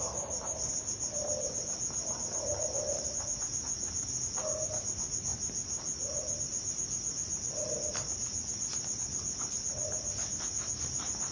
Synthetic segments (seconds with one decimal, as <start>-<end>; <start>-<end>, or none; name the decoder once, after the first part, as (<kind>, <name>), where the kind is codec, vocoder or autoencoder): none